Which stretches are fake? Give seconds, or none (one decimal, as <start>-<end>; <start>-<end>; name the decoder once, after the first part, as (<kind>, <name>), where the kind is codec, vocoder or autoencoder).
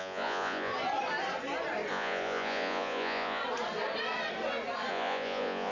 0.0-0.7 (vocoder, Vocos); 1.9-3.4; 4.9-5.7